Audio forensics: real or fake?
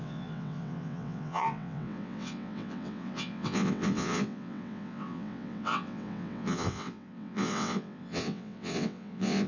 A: fake